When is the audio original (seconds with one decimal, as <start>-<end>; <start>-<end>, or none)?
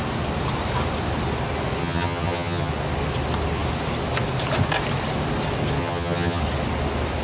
0.0-1.8; 2.7-5.8; 6.4-7.2